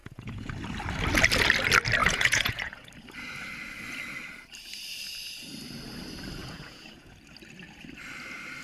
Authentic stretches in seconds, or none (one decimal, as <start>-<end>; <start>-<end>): 0.5-2.0; 2.9-6.4; 7.1-8.6